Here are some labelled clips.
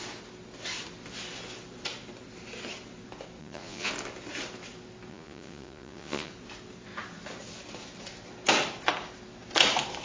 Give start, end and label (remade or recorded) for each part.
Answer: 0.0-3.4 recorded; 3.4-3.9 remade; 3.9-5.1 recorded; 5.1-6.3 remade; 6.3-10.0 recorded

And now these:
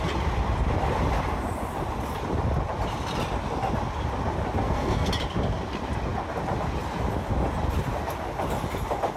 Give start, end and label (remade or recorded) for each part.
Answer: 0.0-4.6 recorded; 4.6-5.1 remade; 5.1-9.2 recorded